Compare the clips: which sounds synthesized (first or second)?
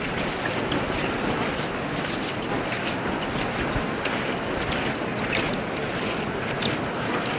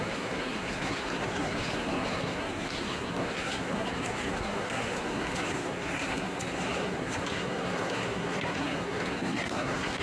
second